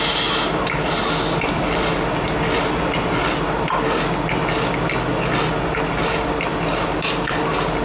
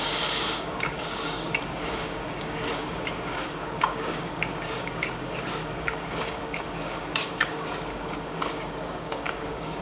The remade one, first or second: second